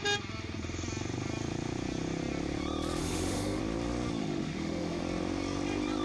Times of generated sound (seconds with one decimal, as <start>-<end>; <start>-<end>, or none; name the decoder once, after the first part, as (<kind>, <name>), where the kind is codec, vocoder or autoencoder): 3.0-3.6 (autoencoder, DAC-VAE); 4.2-5.0